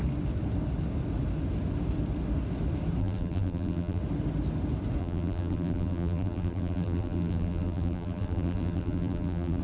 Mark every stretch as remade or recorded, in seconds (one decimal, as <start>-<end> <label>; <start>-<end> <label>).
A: 0.0-3.0 recorded; 3.0-4.0 remade; 4.0-5.0 recorded; 5.0-9.6 remade